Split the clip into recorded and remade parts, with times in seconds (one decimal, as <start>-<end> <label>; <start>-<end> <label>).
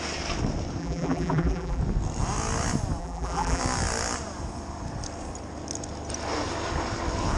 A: 0.0-0.8 recorded; 0.8-1.8 remade; 1.8-3.0 recorded; 3.0-3.6 remade; 3.6-7.4 recorded